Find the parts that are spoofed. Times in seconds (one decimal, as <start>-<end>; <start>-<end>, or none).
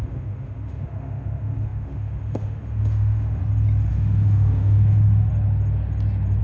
0.0-3.4; 3.9-5.3